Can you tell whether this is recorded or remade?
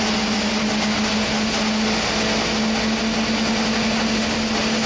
recorded